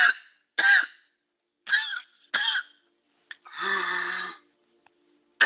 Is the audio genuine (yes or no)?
yes